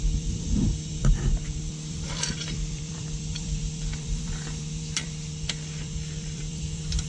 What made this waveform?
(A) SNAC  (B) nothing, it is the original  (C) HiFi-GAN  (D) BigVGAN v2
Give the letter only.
D